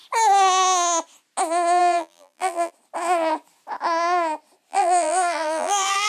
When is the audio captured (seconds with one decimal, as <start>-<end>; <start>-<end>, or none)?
0.0-1.8; 2.7-4.7